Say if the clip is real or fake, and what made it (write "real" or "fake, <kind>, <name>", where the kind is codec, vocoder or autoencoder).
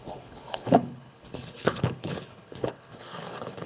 fake, codec, HILCodec